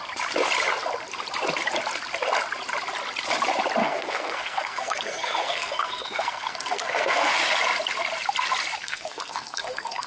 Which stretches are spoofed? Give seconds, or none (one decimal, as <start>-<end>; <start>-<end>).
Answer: 3.8-7.3; 8.8-10.1